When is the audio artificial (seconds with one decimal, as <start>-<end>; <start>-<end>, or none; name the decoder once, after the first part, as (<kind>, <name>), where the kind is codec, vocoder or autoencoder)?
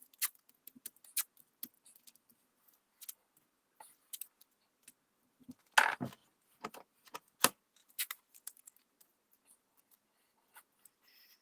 7.8-8.8 (vocoder, BigVGAN v2)